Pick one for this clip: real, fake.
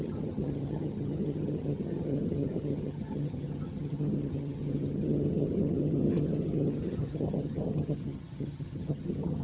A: fake